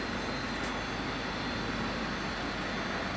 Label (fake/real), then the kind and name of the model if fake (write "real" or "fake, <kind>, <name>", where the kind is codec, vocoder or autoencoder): real